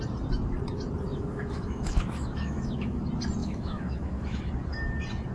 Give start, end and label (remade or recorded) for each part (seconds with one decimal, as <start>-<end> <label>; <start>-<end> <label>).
0.0-1.1 recorded; 1.1-3.0 remade; 3.0-3.4 recorded; 3.4-4.5 remade; 4.5-5.3 recorded